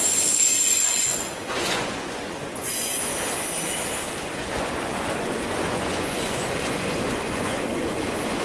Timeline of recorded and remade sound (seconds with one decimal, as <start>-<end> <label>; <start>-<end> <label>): 0.0-3.1 remade; 3.1-4.2 recorded; 4.2-8.4 remade